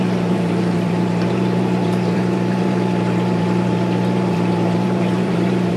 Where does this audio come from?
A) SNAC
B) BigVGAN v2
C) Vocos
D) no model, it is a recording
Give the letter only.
B